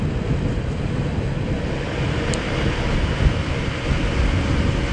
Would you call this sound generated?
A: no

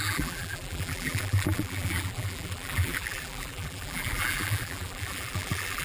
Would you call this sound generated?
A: yes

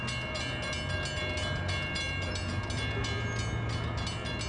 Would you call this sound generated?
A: no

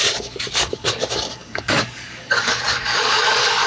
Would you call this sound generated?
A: yes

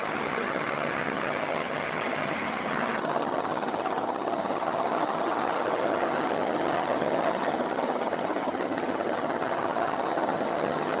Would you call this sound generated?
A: yes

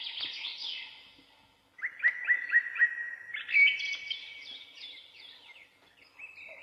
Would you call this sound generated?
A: no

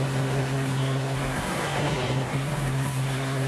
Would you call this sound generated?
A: yes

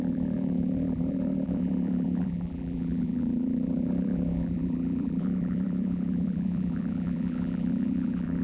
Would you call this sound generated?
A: yes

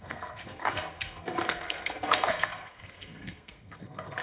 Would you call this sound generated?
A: yes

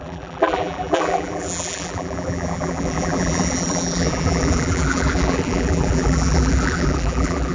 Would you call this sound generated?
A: yes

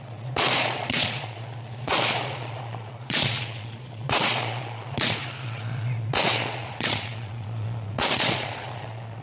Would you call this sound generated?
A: yes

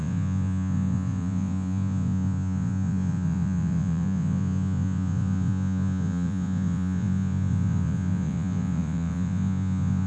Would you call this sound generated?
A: yes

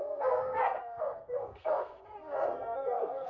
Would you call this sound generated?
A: yes